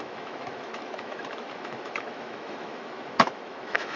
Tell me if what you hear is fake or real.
fake